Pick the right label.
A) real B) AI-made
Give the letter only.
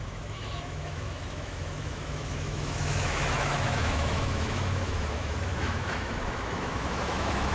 B